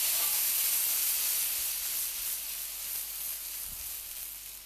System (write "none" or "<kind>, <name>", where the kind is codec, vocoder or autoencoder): none